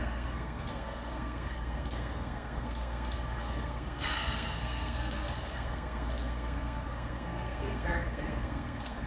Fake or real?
fake